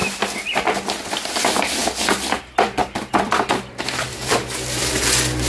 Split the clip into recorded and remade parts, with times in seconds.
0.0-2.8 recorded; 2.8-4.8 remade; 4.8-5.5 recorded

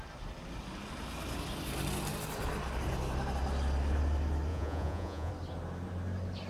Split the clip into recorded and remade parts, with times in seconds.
0.0-4.5 recorded; 4.5-5.3 remade; 5.3-6.5 recorded

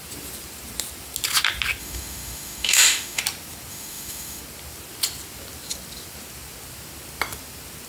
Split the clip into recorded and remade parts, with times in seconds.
0.0-1.8 recorded; 1.8-3.2 remade; 3.2-3.7 recorded; 3.7-4.4 remade; 4.4-7.9 recorded

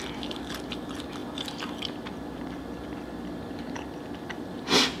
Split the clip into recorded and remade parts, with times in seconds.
0.0-5.0 recorded

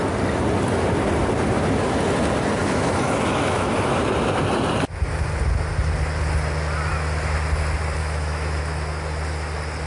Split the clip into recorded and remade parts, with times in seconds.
0.0-2.6 recorded; 2.6-3.7 remade; 3.7-8.0 recorded; 8.0-8.6 remade; 8.6-9.9 recorded